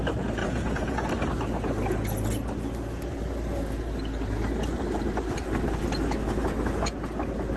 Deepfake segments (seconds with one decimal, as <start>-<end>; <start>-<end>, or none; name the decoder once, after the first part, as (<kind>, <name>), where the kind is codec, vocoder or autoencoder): 0.4-1.1 (vocoder, Vocos)